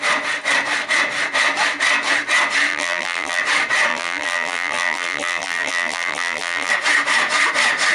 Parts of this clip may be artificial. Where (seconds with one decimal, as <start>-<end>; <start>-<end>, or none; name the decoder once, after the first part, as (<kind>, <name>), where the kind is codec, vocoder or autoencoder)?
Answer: 2.7-3.4 (vocoder, BigVGAN v2); 3.9-6.7